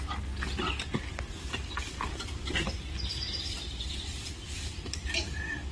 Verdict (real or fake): real